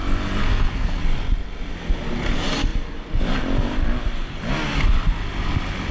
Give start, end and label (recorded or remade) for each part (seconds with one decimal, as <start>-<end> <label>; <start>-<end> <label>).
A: 0.0-0.4 recorded; 0.4-1.0 remade; 1.0-5.9 recorded